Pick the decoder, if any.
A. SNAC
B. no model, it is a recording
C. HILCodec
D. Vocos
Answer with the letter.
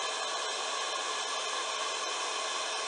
B